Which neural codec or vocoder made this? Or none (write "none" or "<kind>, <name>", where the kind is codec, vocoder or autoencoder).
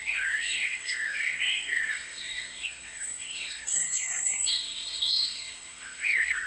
codec, SNAC